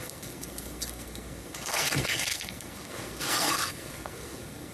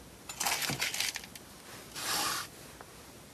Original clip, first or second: second